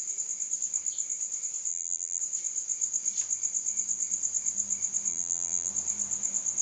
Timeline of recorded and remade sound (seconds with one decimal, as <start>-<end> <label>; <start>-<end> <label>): 0.0-1.7 recorded; 1.7-2.2 remade; 2.2-5.1 recorded; 5.1-5.7 remade; 5.7-6.6 recorded

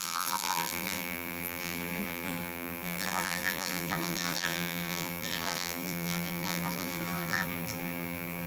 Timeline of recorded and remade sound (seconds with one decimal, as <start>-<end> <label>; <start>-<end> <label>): 0.0-8.5 remade

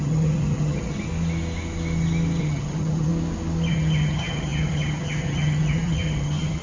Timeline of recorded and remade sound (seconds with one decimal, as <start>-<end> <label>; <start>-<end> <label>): 0.0-1.1 remade; 1.1-2.4 recorded; 2.4-3.1 remade; 3.1-3.7 recorded; 3.7-6.6 remade

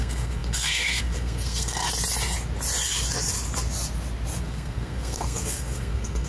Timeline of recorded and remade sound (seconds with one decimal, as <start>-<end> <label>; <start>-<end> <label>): 0.0-1.8 remade; 1.8-4.4 recorded; 4.4-6.3 remade

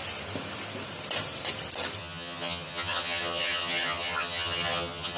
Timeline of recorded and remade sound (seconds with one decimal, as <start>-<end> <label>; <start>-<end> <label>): 0.0-2.0 recorded; 2.0-5.2 remade

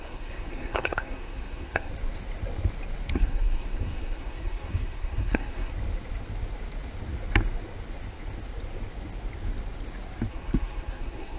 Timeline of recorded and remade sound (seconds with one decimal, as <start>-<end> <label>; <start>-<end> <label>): 0.0-1.9 remade; 1.9-3.1 recorded; 3.1-5.7 remade; 5.7-10.3 recorded; 10.3-11.4 remade

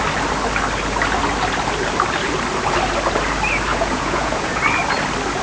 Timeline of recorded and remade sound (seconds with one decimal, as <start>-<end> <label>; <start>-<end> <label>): 0.0-3.7 recorded; 3.7-4.6 remade; 4.6-5.4 recorded